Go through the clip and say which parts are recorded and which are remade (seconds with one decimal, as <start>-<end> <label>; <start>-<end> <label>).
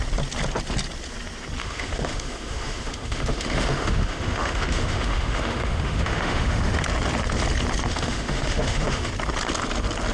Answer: 0.0-1.6 recorded; 1.6-6.8 remade; 6.8-7.9 recorded; 7.9-9.1 remade; 9.1-10.1 recorded